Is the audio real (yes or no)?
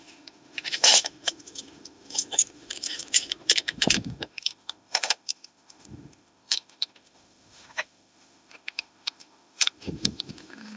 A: no